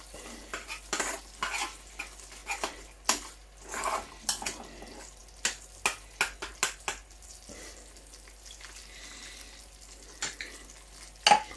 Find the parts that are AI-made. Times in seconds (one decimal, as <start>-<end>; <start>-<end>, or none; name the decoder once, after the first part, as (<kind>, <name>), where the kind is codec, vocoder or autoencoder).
none